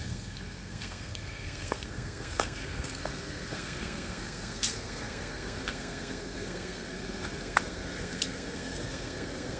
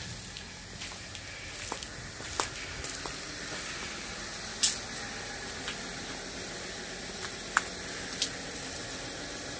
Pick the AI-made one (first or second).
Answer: first